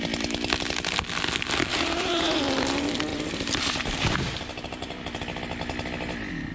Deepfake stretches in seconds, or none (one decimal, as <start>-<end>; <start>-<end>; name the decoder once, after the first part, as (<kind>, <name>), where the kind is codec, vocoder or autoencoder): 1.7-2.4 (vocoder, BigVGAN v2); 3.1-5.0